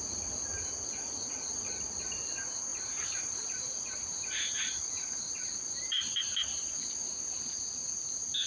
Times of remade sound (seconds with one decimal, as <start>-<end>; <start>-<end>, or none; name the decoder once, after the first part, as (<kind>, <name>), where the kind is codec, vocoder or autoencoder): 2.7-6.2 (vocoder, BigVGAN v2)